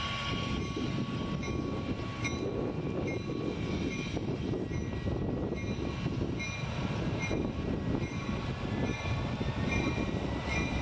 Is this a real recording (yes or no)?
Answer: yes